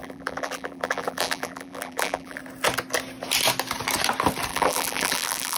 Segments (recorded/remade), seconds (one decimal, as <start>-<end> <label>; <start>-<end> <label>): 0.0-2.4 remade; 2.4-4.5 recorded; 4.5-5.6 remade